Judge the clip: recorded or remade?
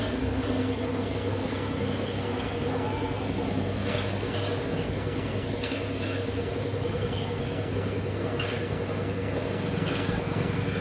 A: remade